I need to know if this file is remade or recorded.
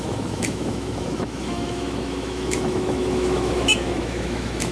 remade